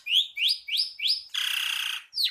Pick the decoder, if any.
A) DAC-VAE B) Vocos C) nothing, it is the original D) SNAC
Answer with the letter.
C